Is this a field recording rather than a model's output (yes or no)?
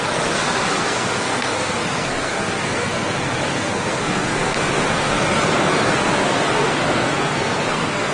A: no